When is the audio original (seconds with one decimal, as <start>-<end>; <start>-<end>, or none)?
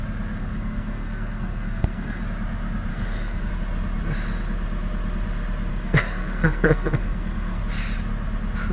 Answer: 0.0-0.4; 2.2-2.9; 3.5-5.7; 7.6-8.7